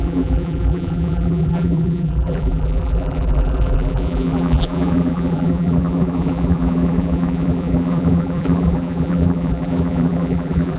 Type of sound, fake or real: fake